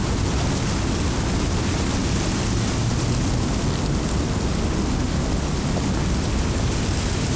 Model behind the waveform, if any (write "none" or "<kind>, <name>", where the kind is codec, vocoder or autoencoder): none